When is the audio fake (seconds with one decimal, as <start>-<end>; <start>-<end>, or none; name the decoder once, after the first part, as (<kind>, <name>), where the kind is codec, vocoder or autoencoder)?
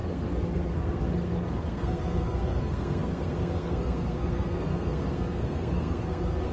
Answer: 0.0-6.5 (codec, SNAC)